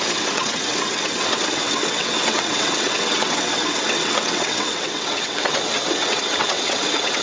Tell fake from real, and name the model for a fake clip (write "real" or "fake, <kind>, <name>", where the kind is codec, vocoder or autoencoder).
fake, vocoder, WaveNeXt